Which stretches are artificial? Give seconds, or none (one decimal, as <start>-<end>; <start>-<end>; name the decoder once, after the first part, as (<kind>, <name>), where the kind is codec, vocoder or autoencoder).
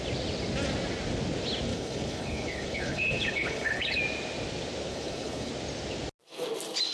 1.7-4.0 (codec, HILCodec); 4.9-5.5